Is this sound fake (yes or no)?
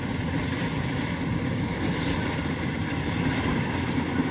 no